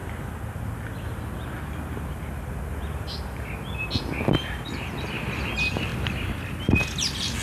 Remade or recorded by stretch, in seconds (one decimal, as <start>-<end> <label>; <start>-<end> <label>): 0.0-7.4 recorded